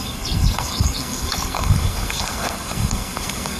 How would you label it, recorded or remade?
remade